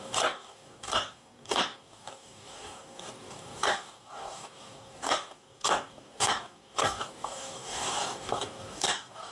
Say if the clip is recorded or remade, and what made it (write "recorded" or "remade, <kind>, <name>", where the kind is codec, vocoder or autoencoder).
remade, codec, DAC